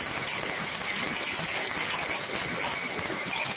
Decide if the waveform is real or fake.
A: real